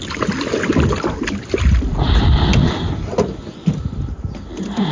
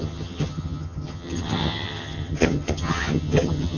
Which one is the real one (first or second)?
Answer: first